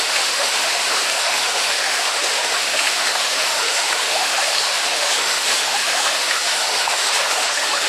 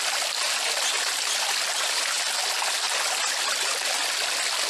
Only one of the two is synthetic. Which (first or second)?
first